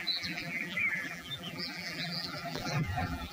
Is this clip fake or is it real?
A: fake